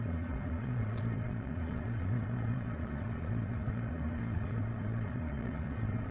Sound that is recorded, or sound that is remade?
remade